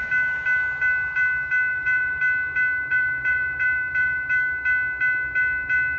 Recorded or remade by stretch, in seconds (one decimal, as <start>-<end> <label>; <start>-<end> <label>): 0.0-1.7 recorded; 1.7-2.2 remade; 2.2-2.9 recorded; 2.9-4.3 remade; 4.3-6.0 recorded